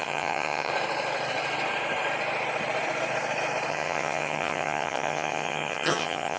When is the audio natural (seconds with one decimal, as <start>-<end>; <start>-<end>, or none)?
0.7-3.7